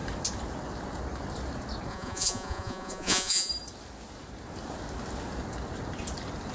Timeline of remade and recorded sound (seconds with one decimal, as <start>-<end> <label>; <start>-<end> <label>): 0.0-1.9 recorded; 1.9-3.5 remade; 3.5-6.5 recorded